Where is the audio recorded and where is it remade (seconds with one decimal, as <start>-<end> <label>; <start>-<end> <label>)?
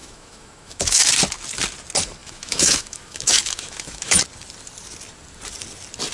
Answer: 0.0-1.1 remade; 1.1-2.2 recorded; 2.2-4.2 remade; 4.2-6.1 recorded